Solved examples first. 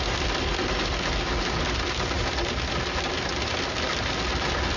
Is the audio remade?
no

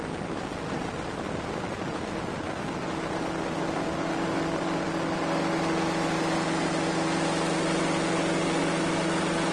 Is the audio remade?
no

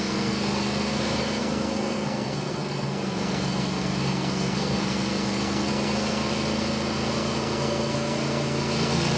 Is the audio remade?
yes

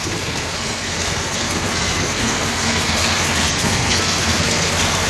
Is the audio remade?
yes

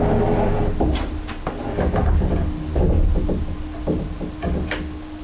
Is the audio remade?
no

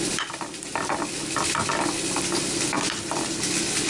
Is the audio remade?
no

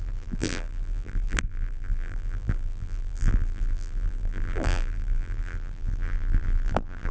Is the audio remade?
yes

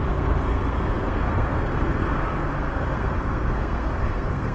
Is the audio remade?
yes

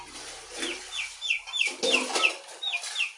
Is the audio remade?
no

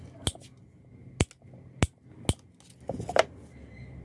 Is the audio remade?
no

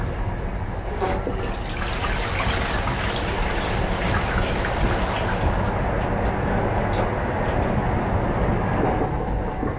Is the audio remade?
no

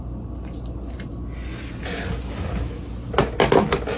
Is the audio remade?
no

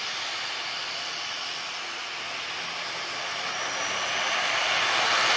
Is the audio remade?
no